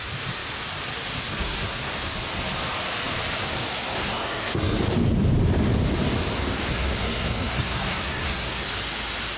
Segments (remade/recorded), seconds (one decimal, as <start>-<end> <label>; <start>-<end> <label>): 0.0-1.3 recorded; 1.3-1.9 remade; 1.9-4.0 recorded; 4.0-4.8 remade; 4.8-6.7 recorded; 6.7-8.7 remade; 8.7-9.4 recorded